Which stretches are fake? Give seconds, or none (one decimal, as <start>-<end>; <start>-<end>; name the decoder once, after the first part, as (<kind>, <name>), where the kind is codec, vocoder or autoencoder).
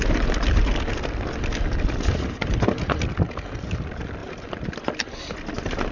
none